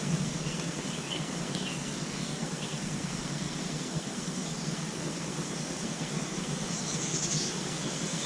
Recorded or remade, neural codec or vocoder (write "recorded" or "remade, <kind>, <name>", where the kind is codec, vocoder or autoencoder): remade, codec, SNAC